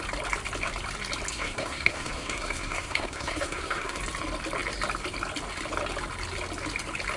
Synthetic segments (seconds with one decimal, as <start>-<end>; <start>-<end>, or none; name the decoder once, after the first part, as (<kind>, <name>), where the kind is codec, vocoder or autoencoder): 1.3-4.0 (codec, SNAC)

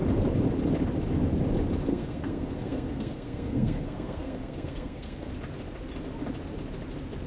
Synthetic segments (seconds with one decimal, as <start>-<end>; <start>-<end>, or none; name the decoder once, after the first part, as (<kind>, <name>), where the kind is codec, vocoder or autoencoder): 1.9-5.3 (codec, SNAC)

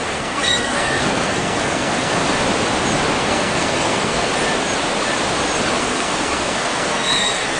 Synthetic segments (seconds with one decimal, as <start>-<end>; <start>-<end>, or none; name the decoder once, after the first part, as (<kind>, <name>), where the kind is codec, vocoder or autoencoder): 0.0-2.2 (codec, SNAC); 3.2-4.3; 5.8-7.6

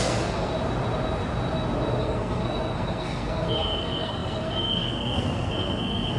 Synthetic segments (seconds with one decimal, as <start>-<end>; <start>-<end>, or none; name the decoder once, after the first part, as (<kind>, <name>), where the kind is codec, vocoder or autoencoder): 0.0-0.5 (codec, SNAC); 2.0-6.2